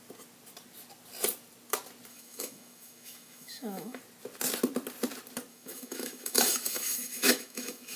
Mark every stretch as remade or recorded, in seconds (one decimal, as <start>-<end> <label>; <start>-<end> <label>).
0.0-2.1 recorded; 2.1-4.0 remade; 4.0-5.5 recorded; 5.5-8.0 remade